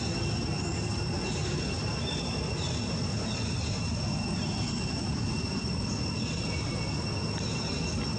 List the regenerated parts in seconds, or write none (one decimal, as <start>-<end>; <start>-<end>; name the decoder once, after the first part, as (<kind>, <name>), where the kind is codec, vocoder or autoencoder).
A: 5.0-5.9 (vocoder, BigVGAN v2)